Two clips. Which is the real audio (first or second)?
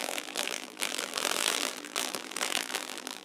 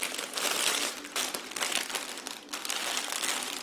second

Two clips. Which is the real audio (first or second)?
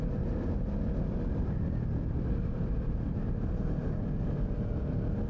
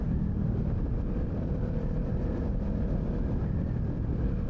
first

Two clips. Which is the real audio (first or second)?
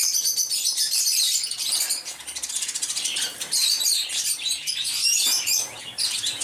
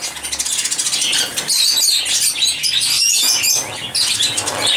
second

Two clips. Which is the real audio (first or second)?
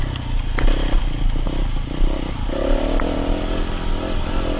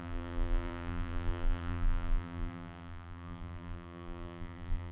first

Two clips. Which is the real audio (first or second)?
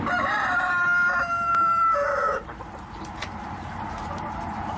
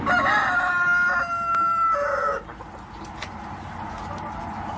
second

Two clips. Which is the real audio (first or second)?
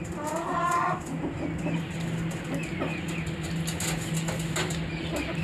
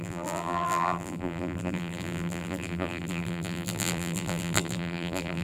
first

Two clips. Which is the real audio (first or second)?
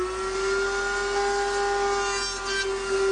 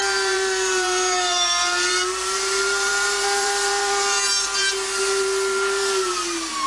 first